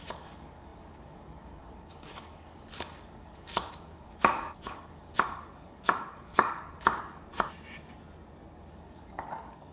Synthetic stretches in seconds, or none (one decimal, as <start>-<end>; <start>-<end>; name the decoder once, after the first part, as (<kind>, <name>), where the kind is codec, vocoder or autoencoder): 0.0-7.3 (codec, DAC); 8.7-9.7